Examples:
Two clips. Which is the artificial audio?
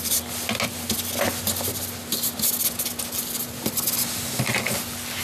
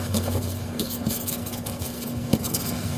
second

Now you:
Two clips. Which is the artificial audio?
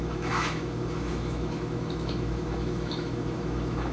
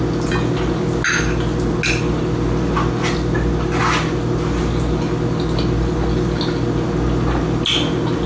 first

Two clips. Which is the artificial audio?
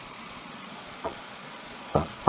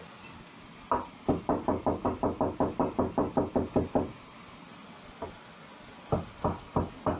first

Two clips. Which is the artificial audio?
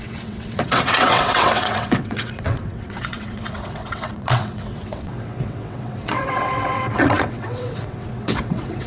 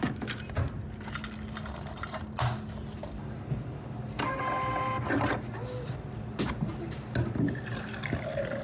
first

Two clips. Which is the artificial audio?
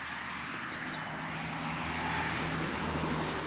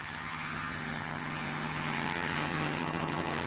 second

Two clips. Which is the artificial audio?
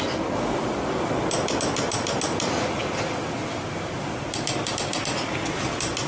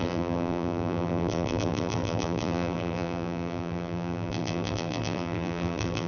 second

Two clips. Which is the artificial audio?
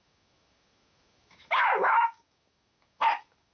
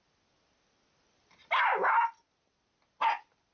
first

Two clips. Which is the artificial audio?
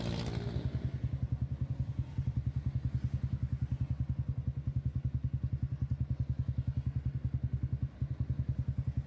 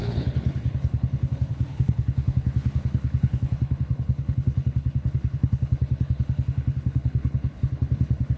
second